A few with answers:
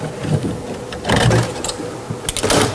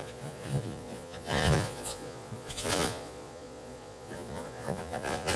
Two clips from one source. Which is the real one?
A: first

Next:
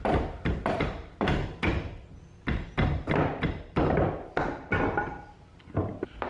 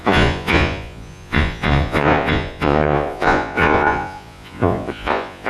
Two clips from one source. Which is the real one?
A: first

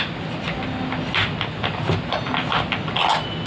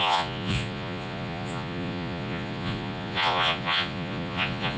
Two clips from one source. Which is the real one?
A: first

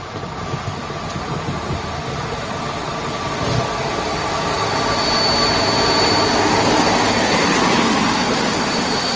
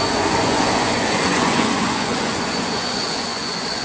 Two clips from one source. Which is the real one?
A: first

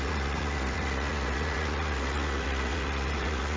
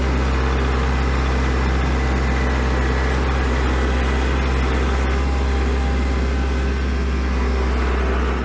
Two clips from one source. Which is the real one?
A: second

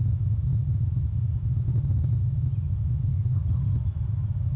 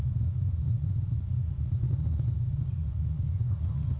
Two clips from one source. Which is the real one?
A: first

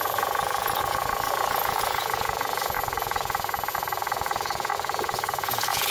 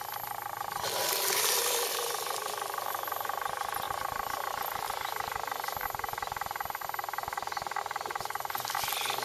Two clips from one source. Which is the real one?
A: second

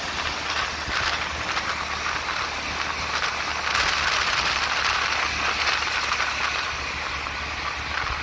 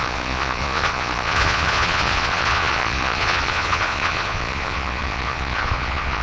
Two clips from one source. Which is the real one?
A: first